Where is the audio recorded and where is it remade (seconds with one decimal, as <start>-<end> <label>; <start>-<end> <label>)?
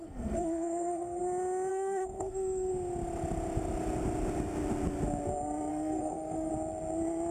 0.0-1.2 remade; 1.2-1.7 recorded; 1.7-2.7 remade; 2.7-5.7 recorded; 5.7-6.5 remade; 6.5-7.3 recorded